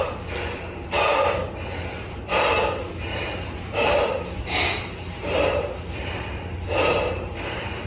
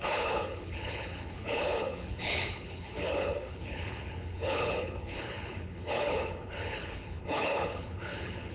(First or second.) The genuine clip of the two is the first